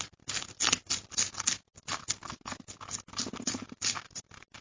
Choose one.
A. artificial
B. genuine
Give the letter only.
B